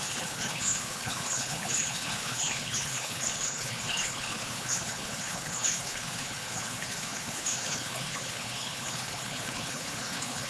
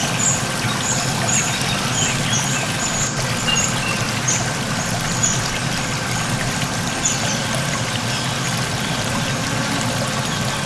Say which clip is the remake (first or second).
first